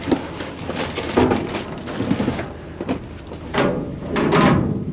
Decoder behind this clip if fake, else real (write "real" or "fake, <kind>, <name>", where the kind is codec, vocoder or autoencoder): real